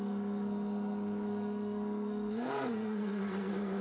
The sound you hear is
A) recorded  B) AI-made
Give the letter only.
B